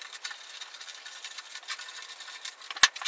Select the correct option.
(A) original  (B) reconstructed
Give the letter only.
A